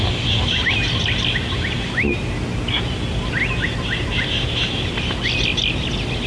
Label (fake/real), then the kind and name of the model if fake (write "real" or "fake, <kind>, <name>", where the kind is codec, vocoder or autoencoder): real